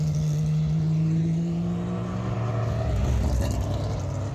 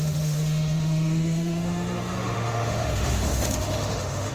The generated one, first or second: second